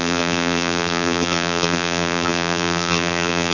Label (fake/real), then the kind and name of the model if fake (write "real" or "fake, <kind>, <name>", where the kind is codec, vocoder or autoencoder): fake, vocoder, BigVGAN v2